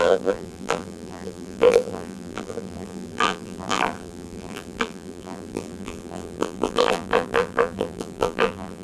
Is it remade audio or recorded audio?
remade